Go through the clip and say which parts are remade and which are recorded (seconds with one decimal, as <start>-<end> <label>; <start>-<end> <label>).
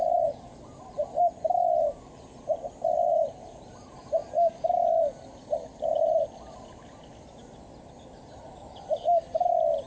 0.0-9.9 recorded